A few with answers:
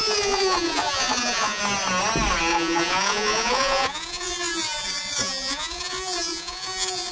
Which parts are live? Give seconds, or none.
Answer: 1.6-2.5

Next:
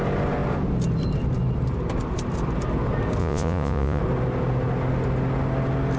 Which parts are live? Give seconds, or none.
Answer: 0.0-3.2; 4.0-6.0

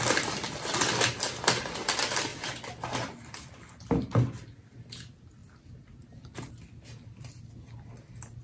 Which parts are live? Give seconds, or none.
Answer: 0.0-8.4

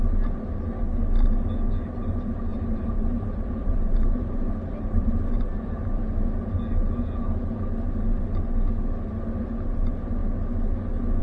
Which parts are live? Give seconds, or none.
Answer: 0.0-2.5; 5.6-11.2

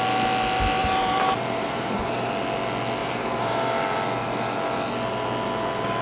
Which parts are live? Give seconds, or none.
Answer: 0.0-0.8; 2.3-3.0; 3.8-6.0

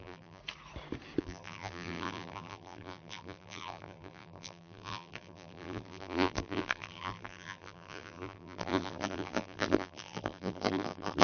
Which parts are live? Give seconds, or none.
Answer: 0.4-1.2

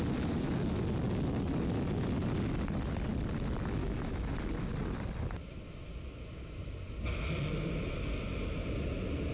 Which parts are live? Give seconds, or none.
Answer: 0.0-3.8; 4.3-9.3

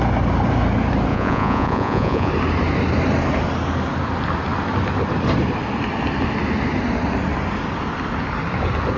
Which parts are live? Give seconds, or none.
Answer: 0.0-1.1; 2.3-9.0